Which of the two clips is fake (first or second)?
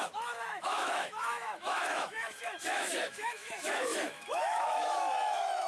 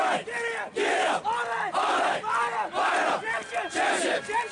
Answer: first